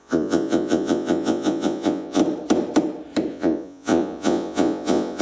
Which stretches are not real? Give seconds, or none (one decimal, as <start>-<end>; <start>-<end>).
0.0-2.2; 3.3-5.2